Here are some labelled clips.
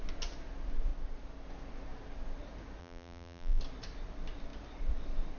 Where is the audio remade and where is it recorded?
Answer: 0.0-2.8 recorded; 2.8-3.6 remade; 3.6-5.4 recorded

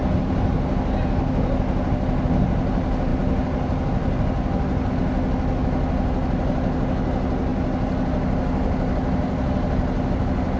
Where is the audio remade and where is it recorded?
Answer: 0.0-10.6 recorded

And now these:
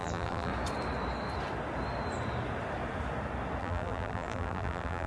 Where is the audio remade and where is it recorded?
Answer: 0.0-0.5 remade; 0.5-3.6 recorded; 3.6-5.1 remade

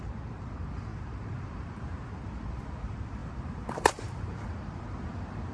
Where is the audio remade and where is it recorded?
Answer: 0.0-5.5 remade

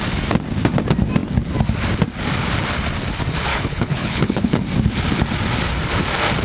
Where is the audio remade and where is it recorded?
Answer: 0.0-3.5 recorded; 3.5-4.6 remade; 4.6-6.4 recorded